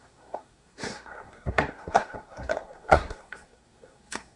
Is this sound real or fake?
fake